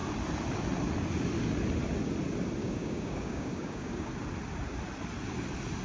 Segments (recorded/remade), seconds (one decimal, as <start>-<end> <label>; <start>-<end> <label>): 0.0-2.6 recorded; 2.6-4.1 remade; 4.1-5.8 recorded